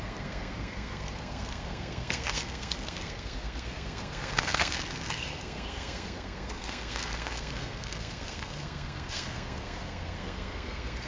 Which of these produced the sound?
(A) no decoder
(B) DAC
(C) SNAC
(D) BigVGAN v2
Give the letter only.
C